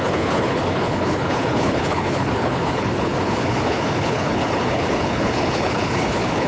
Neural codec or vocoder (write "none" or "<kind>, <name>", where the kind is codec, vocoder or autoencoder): codec, HILCodec